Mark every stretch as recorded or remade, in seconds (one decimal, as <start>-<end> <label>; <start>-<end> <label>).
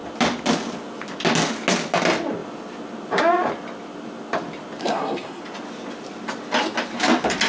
0.0-4.8 recorded; 4.8-5.4 remade; 5.4-7.5 recorded